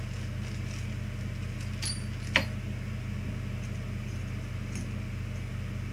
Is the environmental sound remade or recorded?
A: recorded